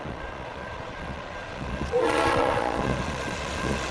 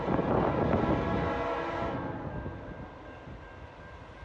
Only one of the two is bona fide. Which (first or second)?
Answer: second